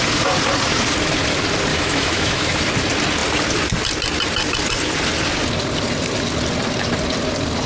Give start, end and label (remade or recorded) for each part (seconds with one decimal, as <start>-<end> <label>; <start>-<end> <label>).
0.0-1.7 recorded; 1.7-2.6 remade; 2.6-7.7 recorded